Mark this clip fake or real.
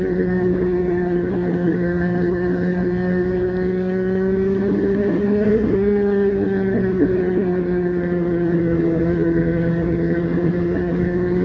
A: fake